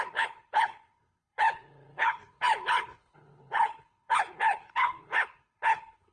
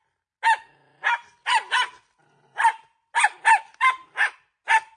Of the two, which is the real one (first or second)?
second